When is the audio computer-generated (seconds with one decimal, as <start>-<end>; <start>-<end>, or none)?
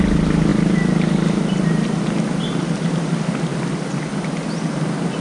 none